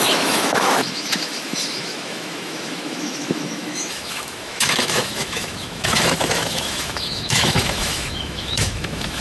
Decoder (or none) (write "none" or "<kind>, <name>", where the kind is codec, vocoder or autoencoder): autoencoder, DAC-VAE